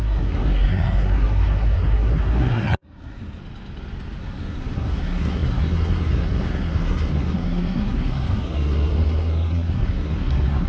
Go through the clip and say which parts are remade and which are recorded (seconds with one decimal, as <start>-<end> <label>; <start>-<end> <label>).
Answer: 0.0-3.4 remade; 3.4-4.2 recorded; 4.2-10.7 remade